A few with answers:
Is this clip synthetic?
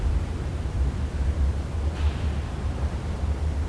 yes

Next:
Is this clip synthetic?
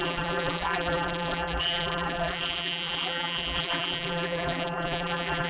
yes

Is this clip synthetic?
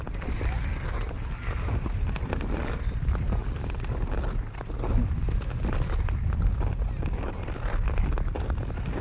no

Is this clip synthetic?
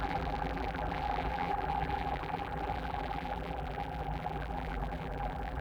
yes